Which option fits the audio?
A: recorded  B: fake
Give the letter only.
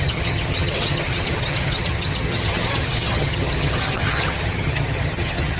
B